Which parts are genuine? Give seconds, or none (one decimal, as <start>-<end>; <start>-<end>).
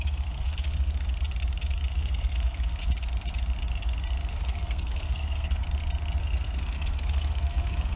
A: 1.1-1.9; 2.8-4.3; 5.6-6.2